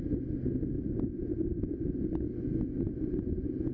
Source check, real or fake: real